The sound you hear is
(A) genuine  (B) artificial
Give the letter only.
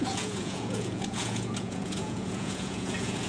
B